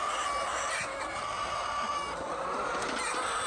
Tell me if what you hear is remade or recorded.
recorded